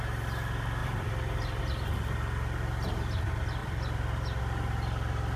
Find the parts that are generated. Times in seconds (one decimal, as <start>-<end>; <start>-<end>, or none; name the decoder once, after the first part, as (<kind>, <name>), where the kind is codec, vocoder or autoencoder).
0.8-1.6 (vocoder, BigVGAN v2); 3.6-4.4